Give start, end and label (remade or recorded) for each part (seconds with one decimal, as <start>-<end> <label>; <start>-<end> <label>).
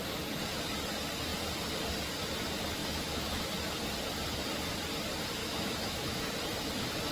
0.0-2.8 recorded; 2.8-3.4 remade; 3.4-5.4 recorded; 5.4-6.2 remade; 6.2-7.1 recorded